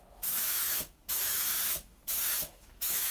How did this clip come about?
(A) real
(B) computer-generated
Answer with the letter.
B